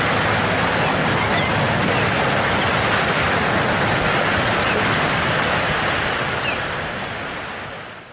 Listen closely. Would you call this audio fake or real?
real